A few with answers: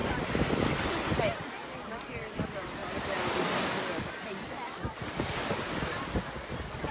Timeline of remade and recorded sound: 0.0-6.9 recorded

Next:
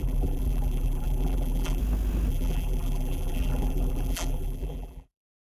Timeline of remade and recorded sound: 0.0-1.8 remade; 1.8-2.3 recorded; 2.3-5.6 remade

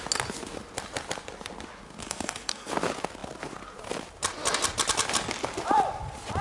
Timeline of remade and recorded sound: 0.0-2.0 recorded; 2.0-2.7 remade; 2.7-6.4 recorded

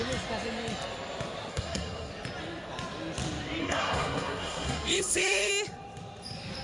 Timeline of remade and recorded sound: 0.0-1.5 recorded; 1.5-2.1 remade; 2.1-3.6 recorded; 3.6-5.5 remade; 5.5-6.6 recorded

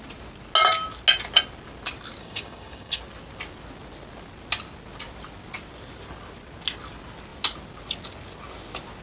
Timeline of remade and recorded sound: 0.0-2.2 recorded; 2.2-3.0 remade; 3.0-9.0 recorded

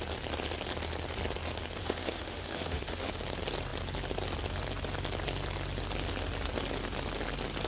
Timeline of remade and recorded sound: 0.0-1.8 recorded; 1.8-3.2 remade; 3.2-7.7 recorded